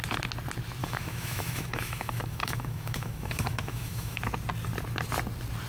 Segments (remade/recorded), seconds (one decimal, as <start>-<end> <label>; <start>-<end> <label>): 0.0-0.8 recorded; 0.8-4.2 remade; 4.2-5.7 recorded